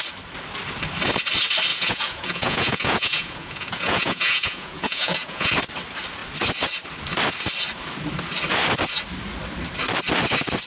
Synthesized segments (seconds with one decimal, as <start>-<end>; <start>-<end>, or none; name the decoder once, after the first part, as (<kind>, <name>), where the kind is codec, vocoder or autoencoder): 1.7-5.5 (vocoder, Vocos)